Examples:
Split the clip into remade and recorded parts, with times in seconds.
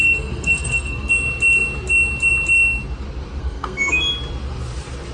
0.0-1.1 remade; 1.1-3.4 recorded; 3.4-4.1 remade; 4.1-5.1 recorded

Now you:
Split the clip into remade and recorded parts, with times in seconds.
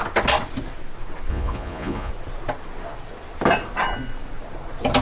0.0-1.3 recorded; 1.3-2.1 remade; 2.1-5.0 recorded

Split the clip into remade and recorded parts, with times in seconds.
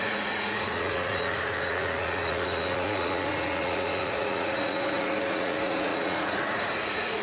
0.0-7.2 remade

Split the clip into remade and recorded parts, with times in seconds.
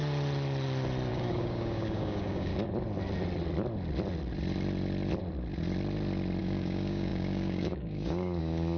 0.0-1.1 recorded; 1.1-2.5 remade; 2.5-6.4 recorded; 6.4-8.8 remade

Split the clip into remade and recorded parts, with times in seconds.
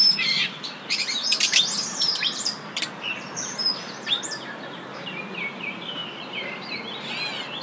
0.0-6.0 remade; 6.0-7.6 recorded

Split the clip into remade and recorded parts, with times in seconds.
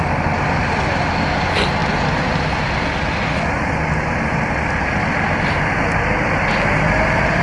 0.0-7.4 recorded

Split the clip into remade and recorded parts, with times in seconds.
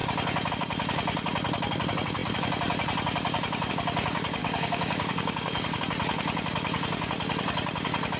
0.0-4.4 recorded; 4.4-5.8 remade; 5.8-8.2 recorded